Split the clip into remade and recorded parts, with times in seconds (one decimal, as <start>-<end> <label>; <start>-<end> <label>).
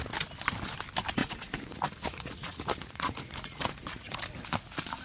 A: 0.0-1.2 recorded; 1.2-4.2 remade; 4.2-5.0 recorded